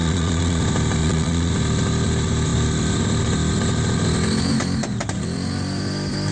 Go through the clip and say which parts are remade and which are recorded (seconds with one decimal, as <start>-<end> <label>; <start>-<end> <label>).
0.0-0.6 remade; 0.6-1.0 recorded; 1.0-1.5 remade; 1.5-6.3 recorded